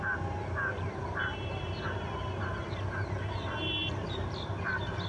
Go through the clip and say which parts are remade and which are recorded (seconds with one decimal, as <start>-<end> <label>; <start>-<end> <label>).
0.0-0.7 recorded; 0.7-2.0 remade; 2.0-2.5 recorded; 2.5-5.1 remade